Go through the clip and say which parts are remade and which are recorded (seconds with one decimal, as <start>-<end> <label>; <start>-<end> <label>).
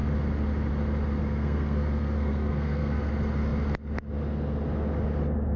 0.0-1.2 recorded; 1.2-3.1 remade; 3.1-5.6 recorded